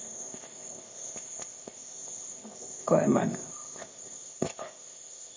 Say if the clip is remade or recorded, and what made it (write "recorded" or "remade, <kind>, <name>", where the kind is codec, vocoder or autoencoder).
remade, codec, ZipCodec